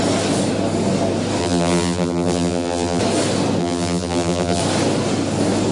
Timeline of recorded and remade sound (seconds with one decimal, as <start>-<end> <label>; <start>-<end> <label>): 0.0-1.4 recorded; 1.4-3.0 remade; 3.0-3.6 recorded; 3.6-4.6 remade; 4.6-5.7 recorded